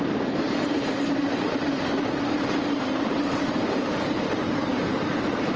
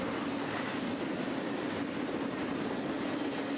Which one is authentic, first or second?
second